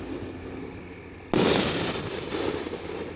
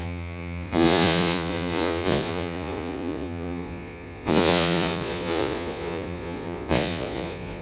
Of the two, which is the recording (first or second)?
first